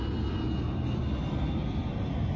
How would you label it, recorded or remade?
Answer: recorded